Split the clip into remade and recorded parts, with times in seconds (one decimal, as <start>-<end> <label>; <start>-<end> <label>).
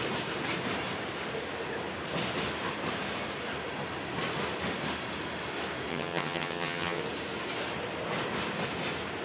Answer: 0.0-5.9 recorded; 5.9-7.0 remade; 7.0-9.2 recorded